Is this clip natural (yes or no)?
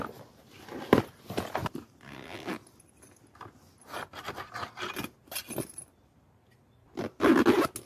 yes